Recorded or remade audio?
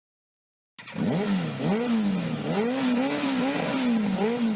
recorded